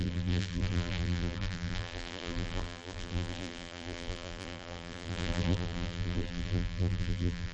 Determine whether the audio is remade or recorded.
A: remade